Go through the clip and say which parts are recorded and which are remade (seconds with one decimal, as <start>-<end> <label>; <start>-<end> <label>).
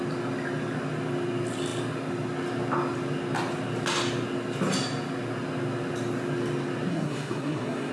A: 0.0-6.9 recorded; 6.9-7.9 remade